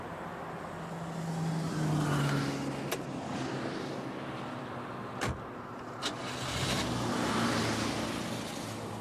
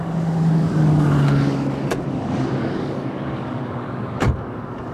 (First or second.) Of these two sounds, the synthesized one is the second